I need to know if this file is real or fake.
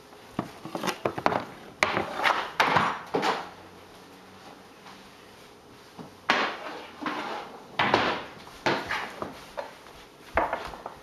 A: real